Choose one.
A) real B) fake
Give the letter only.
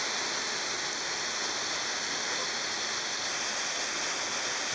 A